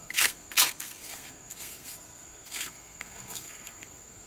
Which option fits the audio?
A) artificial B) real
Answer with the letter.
A